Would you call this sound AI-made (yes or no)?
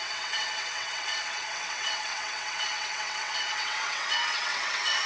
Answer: yes